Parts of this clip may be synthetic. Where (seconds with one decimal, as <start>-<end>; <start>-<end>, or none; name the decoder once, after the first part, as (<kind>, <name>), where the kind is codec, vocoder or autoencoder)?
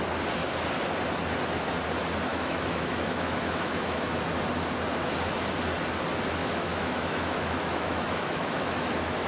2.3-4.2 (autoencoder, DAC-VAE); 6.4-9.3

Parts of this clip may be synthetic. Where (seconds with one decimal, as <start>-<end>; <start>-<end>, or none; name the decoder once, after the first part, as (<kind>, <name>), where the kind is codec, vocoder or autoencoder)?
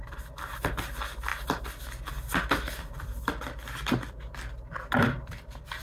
none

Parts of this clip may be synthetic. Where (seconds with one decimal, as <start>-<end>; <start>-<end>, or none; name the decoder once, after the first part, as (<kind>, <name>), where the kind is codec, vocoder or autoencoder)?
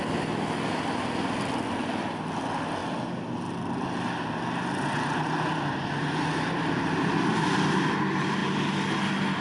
none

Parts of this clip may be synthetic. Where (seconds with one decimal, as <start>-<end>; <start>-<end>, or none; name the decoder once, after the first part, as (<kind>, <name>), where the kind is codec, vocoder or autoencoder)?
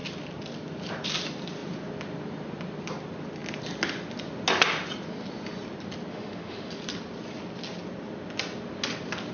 6.1-6.7 (autoencoder, DAC-VAE)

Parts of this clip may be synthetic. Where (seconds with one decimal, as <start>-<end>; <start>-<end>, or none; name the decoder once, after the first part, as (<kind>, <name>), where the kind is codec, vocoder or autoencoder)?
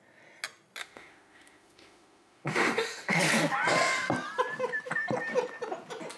0.8-3.2 (autoencoder, DAC-VAE)